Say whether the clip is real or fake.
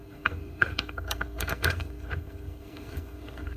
fake